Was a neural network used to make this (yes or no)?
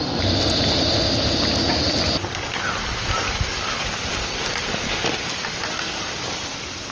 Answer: no